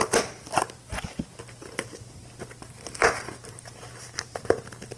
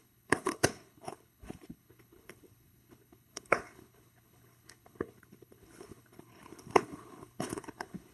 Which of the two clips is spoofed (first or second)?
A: second